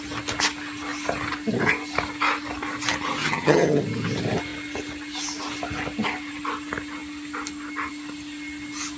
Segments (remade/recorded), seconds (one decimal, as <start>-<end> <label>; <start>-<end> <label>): 0.0-3.2 recorded; 3.2-3.8 remade; 3.8-9.0 recorded